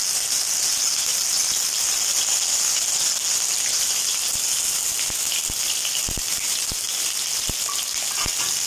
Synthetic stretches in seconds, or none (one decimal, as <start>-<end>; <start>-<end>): none